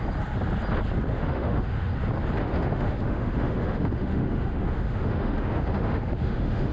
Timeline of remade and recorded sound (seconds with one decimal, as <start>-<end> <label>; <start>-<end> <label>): 0.0-1.1 recorded; 1.1-1.9 remade; 1.9-2.4 recorded; 2.4-6.7 remade